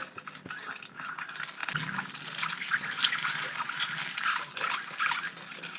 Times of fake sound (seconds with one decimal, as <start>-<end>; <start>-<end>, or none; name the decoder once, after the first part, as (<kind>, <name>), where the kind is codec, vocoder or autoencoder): none